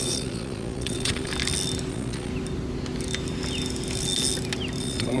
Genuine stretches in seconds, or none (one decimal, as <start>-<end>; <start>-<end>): 1.3-1.9; 2.3-4.8